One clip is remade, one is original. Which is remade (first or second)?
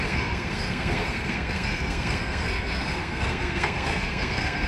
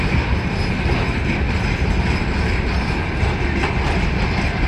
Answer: first